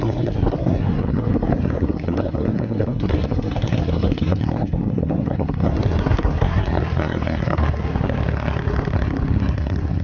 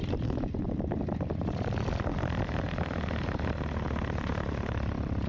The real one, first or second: second